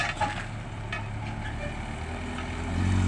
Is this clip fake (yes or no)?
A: no